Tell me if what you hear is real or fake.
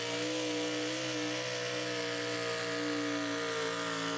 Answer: real